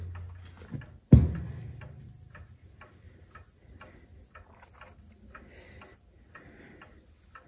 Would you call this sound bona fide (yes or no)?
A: yes